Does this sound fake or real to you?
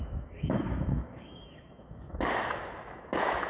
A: fake